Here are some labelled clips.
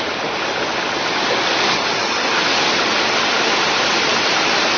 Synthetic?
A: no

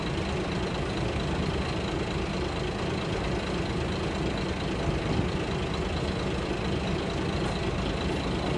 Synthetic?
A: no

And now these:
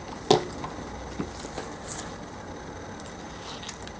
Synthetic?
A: no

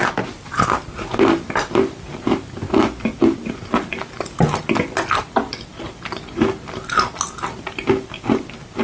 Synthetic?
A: no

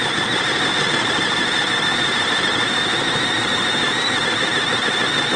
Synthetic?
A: no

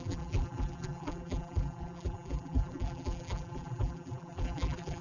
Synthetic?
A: yes